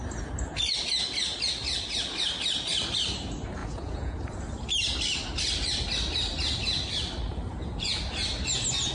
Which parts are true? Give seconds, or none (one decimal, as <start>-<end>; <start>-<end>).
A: 0.0-3.6; 4.2-7.5; 8.0-8.9